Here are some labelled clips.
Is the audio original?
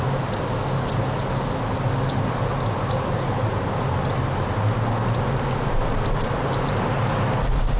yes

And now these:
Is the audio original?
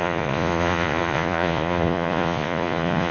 no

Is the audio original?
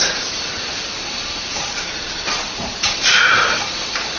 no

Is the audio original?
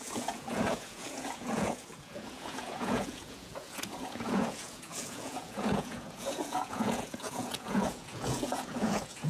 no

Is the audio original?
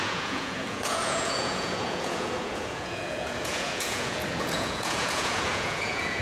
no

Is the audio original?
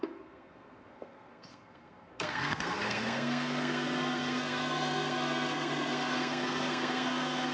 no